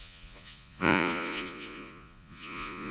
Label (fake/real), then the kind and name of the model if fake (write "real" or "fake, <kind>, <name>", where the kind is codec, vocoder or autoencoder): fake, vocoder, Vocos